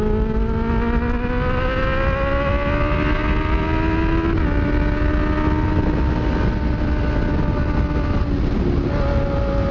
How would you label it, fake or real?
real